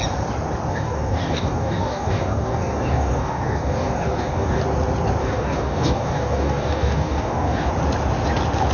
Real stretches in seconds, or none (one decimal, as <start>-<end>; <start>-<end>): 0.0-0.7; 4.6-5.2; 7.7-8.7